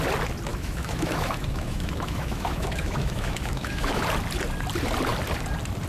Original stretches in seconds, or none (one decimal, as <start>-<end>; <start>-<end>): 0.0-0.5; 4.0-5.9